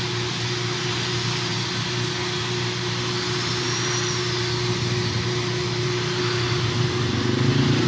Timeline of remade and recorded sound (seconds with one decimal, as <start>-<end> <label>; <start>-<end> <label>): 0.0-7.9 recorded